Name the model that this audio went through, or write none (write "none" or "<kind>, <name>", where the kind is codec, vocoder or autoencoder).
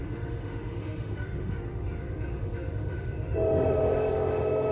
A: autoencoder, DAC-VAE